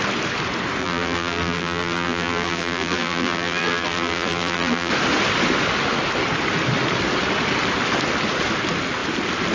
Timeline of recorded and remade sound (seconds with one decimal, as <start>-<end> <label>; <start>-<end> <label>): 0.0-0.8 recorded; 0.8-4.9 remade; 4.9-9.5 recorded